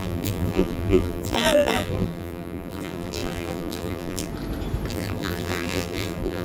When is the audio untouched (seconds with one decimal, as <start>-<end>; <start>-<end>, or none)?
4.3-4.9